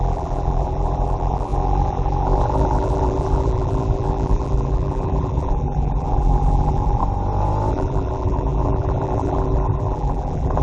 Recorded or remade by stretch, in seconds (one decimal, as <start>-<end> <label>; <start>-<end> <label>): 0.0-7.0 remade; 7.0-7.7 recorded; 7.7-10.6 remade